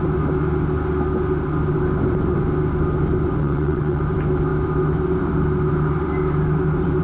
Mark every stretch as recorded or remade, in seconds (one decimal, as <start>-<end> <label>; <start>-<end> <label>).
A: 0.0-3.4 recorded; 3.4-4.0 remade; 4.0-7.0 recorded